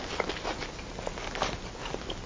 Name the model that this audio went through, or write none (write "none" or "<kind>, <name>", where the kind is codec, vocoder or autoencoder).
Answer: none